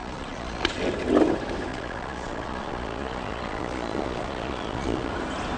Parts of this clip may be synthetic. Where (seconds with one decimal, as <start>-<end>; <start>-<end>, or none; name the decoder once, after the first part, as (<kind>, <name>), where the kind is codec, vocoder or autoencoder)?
0.0-0.8 (vocoder, Vocos); 1.7-5.1